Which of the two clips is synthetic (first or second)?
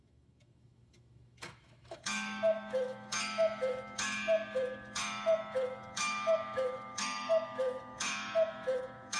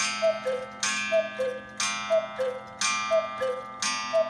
first